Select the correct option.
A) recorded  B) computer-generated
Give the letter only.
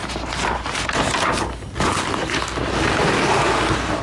A